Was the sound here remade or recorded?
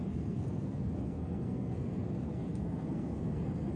remade